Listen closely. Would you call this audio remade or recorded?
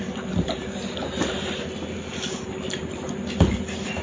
remade